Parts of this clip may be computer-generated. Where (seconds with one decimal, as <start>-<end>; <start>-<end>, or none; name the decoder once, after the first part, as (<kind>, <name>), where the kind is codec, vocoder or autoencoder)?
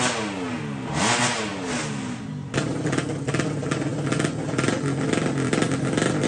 none